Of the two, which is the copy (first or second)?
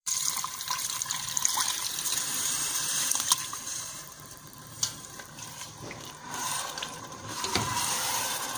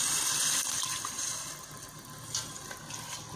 first